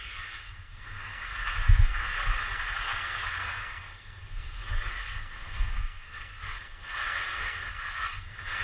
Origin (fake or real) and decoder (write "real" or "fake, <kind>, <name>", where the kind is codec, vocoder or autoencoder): fake, codec, SNAC